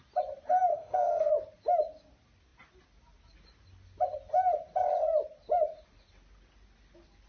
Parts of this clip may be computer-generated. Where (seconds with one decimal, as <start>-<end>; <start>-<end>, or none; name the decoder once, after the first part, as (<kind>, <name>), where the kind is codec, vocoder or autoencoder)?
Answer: 0.7-1.3 (codec, SNAC)